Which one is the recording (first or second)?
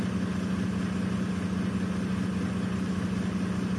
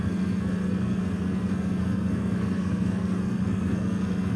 first